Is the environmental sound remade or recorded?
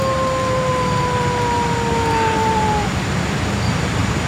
recorded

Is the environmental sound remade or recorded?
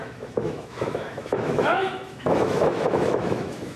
remade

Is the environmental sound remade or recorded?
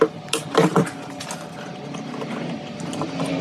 recorded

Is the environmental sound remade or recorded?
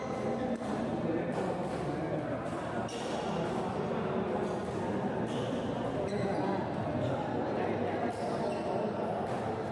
recorded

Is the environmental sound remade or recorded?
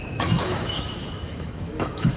remade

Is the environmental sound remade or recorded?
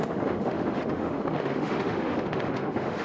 remade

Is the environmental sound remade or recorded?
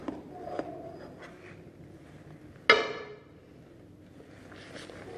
recorded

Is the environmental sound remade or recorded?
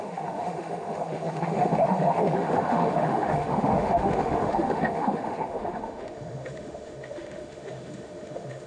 remade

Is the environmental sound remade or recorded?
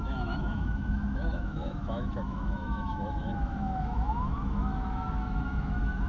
remade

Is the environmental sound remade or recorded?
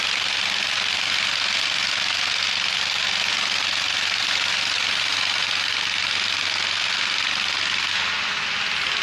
recorded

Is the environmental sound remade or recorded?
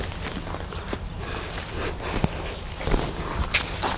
recorded